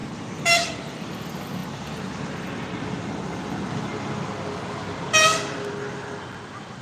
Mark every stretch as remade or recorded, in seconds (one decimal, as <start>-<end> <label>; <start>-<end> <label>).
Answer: 0.0-0.7 remade; 0.7-6.8 recorded

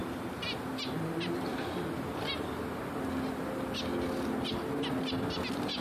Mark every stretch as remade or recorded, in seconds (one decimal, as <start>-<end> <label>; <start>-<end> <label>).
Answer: 0.0-0.7 remade; 0.7-1.5 recorded; 1.5-2.8 remade; 2.8-5.8 recorded

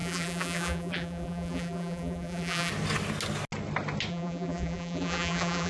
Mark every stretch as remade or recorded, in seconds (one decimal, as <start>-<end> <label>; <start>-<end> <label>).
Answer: 0.0-2.7 remade; 2.7-4.1 recorded; 4.1-5.7 remade

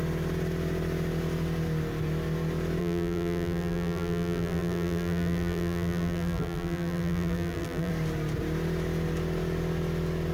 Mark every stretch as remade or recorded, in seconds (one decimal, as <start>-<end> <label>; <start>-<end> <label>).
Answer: 0.0-2.8 recorded; 2.8-7.9 remade; 7.9-10.3 recorded

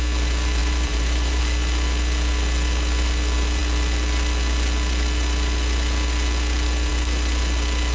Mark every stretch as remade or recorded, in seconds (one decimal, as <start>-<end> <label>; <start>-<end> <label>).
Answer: 0.0-0.6 recorded; 0.6-1.4 remade; 1.4-7.9 recorded

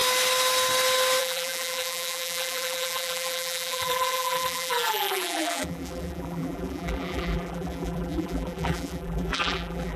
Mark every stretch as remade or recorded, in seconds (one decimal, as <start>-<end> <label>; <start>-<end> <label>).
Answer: 0.0-1.2 recorded; 1.2-10.0 remade

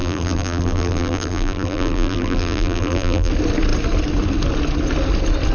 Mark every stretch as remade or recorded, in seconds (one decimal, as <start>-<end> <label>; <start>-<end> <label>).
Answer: 0.0-3.3 remade; 3.3-5.5 recorded

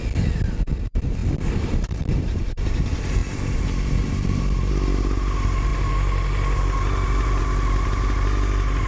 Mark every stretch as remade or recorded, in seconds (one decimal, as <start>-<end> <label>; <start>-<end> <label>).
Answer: 0.0-8.9 recorded